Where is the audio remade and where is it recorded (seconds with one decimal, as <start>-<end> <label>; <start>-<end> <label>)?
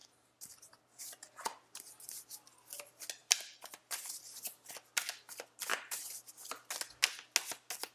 0.0-0.7 remade; 0.7-3.2 recorded; 3.2-3.9 remade; 3.9-5.7 recorded; 5.7-6.3 remade; 6.3-7.9 recorded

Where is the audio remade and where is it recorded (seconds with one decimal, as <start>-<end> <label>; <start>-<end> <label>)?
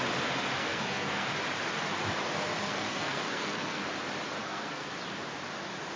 0.0-0.6 recorded; 0.6-1.3 remade; 1.3-2.6 recorded; 2.6-3.8 remade; 3.8-4.4 recorded; 4.4-4.9 remade; 4.9-6.0 recorded